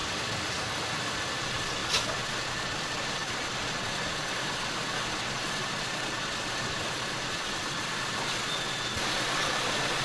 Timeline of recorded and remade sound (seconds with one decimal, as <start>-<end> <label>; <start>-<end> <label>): 0.0-1.4 recorded; 1.4-10.0 remade